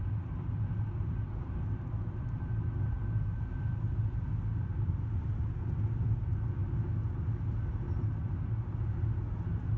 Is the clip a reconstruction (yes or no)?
no